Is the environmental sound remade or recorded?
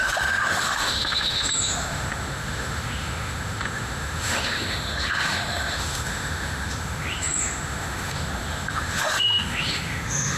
remade